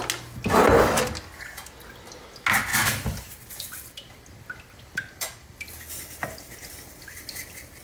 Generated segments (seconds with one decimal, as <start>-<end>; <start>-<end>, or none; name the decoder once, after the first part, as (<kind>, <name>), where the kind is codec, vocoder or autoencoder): none